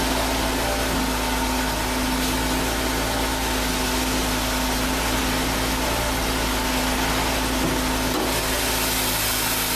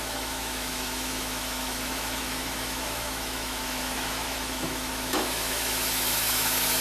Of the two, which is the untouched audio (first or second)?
first